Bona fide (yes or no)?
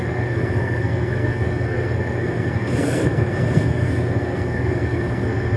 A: no